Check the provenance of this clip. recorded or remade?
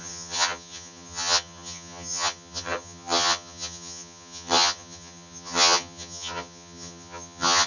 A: remade